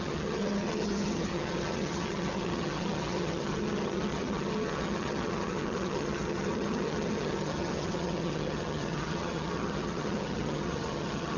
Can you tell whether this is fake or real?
fake